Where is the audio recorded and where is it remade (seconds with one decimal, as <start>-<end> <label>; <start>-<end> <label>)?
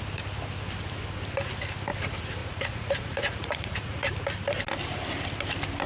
0.0-2.4 recorded; 2.4-4.1 remade; 4.1-5.9 recorded